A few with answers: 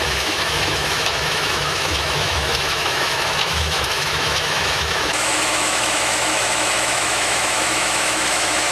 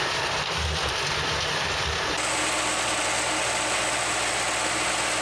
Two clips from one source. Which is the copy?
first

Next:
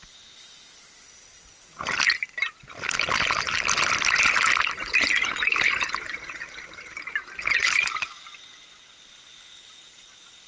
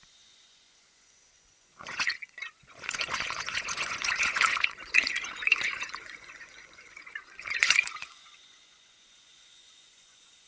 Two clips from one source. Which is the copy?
second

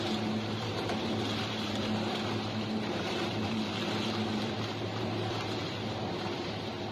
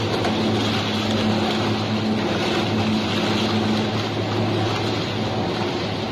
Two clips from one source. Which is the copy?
first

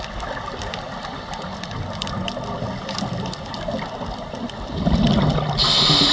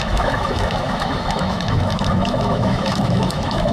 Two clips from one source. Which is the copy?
second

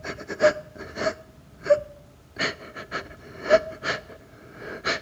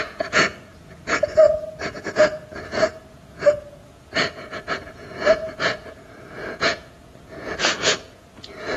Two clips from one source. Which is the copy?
second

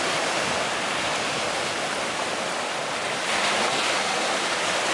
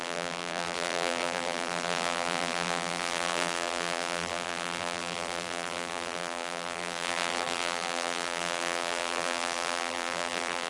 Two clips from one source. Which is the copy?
second